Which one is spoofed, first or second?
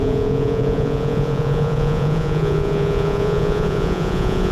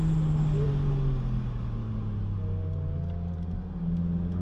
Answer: first